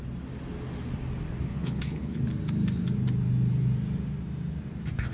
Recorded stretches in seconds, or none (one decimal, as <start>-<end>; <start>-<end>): 0.0-1.5; 2.2-5.1